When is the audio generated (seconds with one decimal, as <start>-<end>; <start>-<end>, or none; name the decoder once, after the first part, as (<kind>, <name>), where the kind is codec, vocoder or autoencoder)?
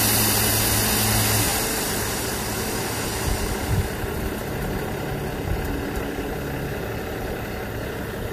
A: none